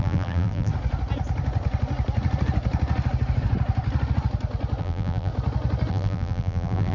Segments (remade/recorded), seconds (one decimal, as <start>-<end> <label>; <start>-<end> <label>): 0.0-0.7 remade; 0.7-4.8 recorded; 4.8-5.3 remade; 5.3-5.9 recorded; 5.9-6.9 remade

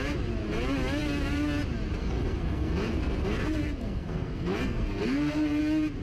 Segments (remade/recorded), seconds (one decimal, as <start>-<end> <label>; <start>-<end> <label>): 0.0-2.0 recorded; 2.0-5.6 remade; 5.6-6.0 recorded

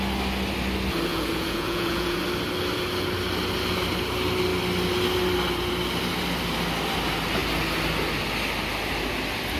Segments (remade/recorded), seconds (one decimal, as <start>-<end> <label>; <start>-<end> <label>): 0.0-1.1 recorded; 1.1-2.2 remade; 2.2-9.6 recorded

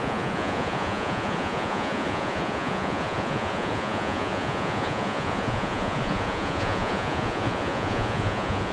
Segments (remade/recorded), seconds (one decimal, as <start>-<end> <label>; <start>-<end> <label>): 0.0-8.7 remade

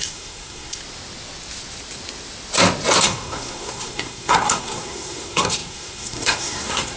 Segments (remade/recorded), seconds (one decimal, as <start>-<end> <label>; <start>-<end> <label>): 0.0-0.8 remade; 0.8-3.0 recorded; 3.0-7.0 remade